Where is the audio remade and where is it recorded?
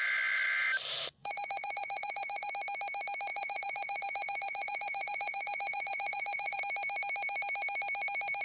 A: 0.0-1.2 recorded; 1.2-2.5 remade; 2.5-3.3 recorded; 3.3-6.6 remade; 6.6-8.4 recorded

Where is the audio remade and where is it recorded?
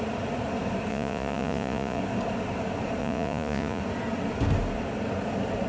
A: 0.0-0.9 recorded; 0.9-2.0 remade; 2.0-3.0 recorded; 3.0-3.8 remade; 3.8-5.7 recorded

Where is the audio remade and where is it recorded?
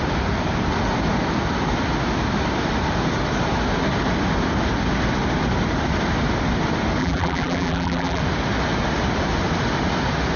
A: 0.0-7.0 recorded; 7.0-8.2 remade; 8.2-10.4 recorded